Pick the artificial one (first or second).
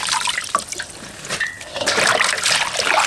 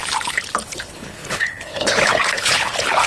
second